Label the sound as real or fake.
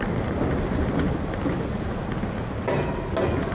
real